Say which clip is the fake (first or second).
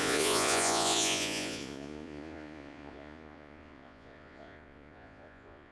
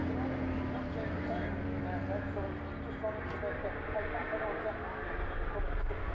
first